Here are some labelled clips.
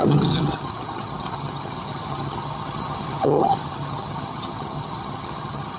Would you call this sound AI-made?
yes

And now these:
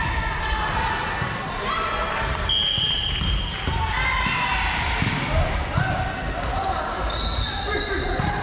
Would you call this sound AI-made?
no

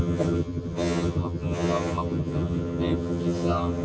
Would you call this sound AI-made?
yes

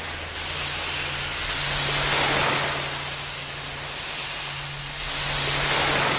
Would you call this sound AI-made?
no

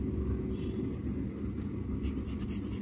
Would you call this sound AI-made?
no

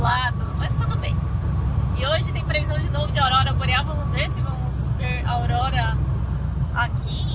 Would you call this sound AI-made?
no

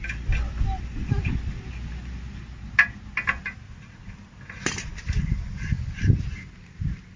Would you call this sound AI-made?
no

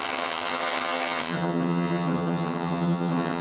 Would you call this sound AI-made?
yes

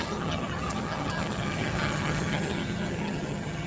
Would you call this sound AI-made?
yes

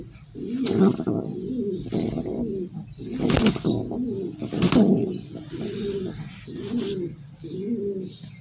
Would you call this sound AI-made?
no